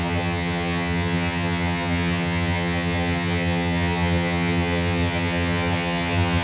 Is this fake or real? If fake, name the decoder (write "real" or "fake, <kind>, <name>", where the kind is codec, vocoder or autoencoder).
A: fake, vocoder, HiFi-GAN